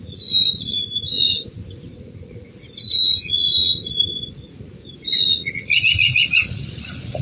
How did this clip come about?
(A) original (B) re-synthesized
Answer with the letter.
B